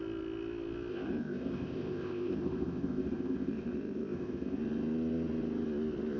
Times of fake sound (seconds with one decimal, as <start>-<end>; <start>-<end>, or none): 0.9-4.6